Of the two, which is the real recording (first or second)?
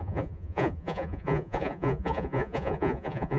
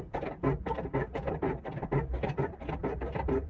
second